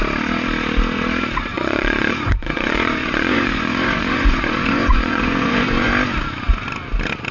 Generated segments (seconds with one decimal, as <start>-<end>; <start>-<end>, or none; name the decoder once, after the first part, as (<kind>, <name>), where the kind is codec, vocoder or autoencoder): 1.5-5.9 (vocoder, Vocos)